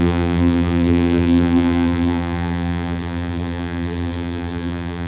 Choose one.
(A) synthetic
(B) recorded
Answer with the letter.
A